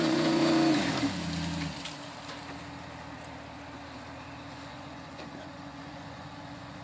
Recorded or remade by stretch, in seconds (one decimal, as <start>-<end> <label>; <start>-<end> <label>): 0.0-0.4 remade; 0.4-4.5 recorded; 4.5-6.8 remade